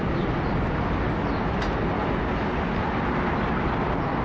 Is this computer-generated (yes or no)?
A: no